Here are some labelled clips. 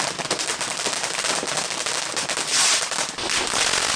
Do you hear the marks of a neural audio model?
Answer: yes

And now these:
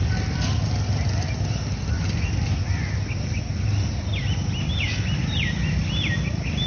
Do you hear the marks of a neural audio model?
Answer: no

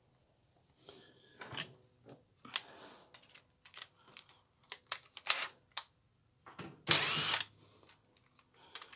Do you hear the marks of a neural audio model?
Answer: no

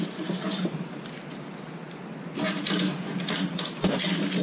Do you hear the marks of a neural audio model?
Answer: no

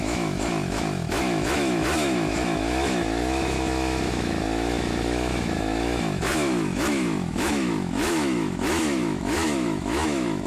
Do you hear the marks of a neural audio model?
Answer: yes